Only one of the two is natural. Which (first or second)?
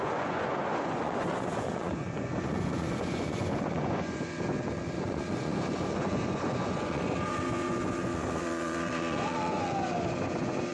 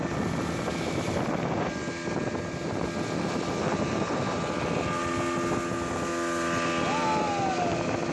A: second